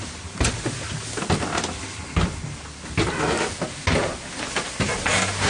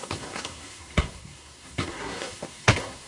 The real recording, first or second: first